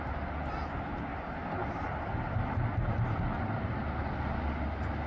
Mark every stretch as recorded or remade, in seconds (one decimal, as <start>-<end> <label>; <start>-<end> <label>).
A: 0.0-5.1 recorded